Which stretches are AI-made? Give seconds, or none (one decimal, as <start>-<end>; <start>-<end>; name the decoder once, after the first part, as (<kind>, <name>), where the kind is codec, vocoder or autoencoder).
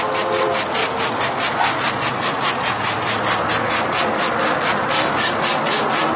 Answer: 0.8-3.5 (vocoder, BigVGAN v2)